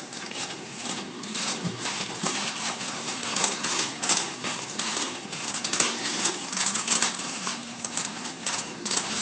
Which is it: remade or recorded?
remade